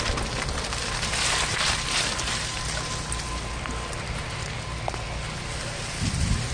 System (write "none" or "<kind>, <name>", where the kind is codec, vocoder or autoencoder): none